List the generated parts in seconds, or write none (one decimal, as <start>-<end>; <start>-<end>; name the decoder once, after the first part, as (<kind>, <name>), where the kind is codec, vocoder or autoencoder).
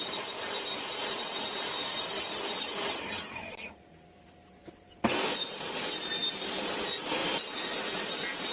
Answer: none